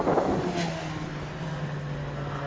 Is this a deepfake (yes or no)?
no